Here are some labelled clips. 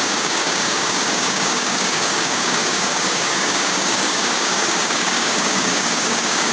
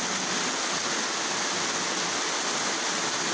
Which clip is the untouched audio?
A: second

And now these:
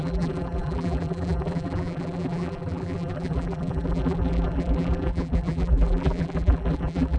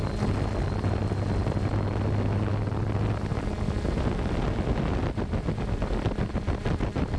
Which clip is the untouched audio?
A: second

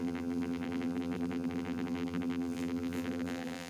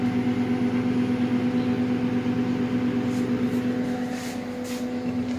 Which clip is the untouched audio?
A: second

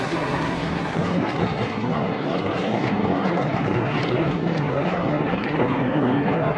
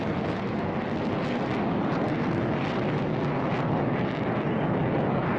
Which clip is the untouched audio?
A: second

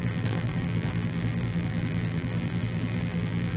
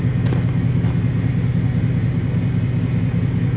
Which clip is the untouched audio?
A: second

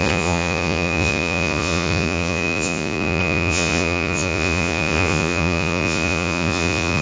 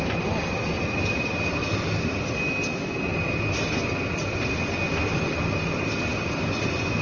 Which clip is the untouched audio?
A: second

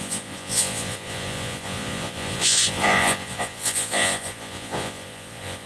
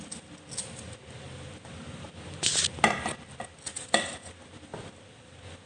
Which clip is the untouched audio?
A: second